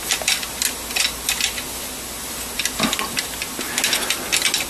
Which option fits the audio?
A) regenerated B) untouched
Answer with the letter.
B